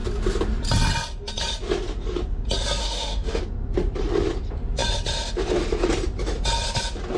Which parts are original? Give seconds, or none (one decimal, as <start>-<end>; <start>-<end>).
0.0-2.8; 3.4-7.2